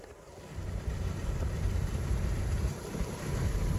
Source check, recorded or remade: remade